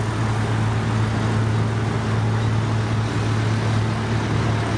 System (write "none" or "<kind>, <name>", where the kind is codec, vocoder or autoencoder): none